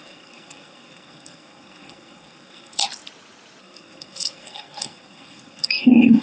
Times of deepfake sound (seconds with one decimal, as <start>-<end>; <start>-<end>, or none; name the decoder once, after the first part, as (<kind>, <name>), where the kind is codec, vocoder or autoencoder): 0.0-2.8 (codec, SNAC); 3.6-6.2